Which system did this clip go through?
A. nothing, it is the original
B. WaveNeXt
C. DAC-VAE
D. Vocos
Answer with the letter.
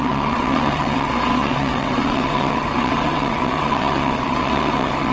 B